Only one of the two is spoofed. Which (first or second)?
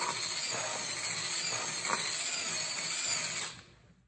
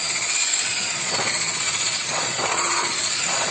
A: second